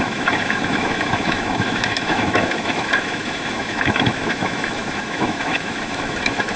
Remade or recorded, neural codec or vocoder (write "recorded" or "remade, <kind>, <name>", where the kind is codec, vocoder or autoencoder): remade, autoencoder, DAC-VAE